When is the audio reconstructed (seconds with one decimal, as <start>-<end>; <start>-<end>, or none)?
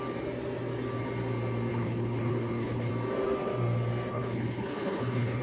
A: 1.7-2.9; 4.1-5.4